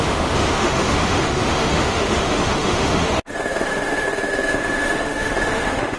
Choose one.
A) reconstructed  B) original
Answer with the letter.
A